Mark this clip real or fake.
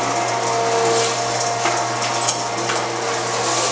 real